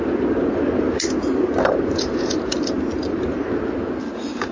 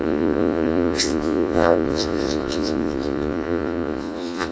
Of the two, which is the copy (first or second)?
second